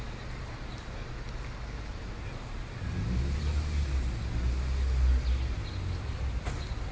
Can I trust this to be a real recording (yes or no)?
yes